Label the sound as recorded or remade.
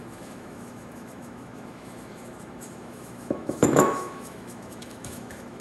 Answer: remade